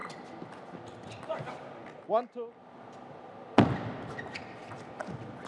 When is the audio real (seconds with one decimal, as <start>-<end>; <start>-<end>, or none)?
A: 0.0-5.5